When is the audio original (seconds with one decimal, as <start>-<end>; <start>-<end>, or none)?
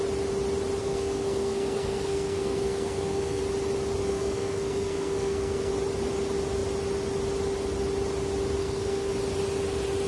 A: 0.0-0.8; 3.4-4.0; 5.7-8.6; 9.1-10.1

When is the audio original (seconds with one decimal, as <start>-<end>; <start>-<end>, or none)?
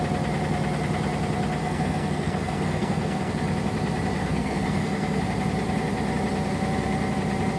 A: 0.0-1.6; 3.3-4.2; 5.2-7.6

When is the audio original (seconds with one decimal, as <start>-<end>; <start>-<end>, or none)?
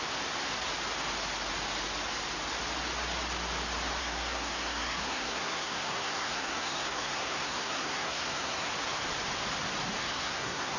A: 0.0-4.0; 8.7-10.0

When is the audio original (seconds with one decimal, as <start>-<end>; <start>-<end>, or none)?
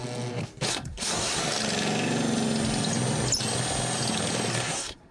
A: 0.0-0.7; 1.4-4.5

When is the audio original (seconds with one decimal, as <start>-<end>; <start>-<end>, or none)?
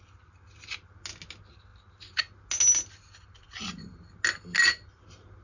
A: 0.0-5.4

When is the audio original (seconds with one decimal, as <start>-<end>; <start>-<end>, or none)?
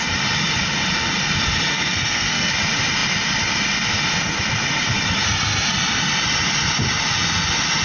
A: 0.0-1.7; 2.5-7.8